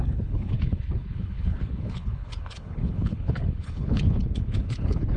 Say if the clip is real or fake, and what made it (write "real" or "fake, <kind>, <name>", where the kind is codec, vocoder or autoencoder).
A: fake, codec, HILCodec